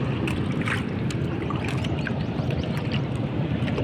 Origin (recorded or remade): recorded